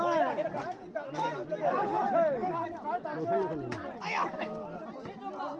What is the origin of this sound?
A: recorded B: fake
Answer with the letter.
A